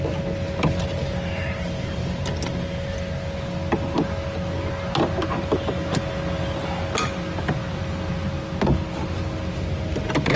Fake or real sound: real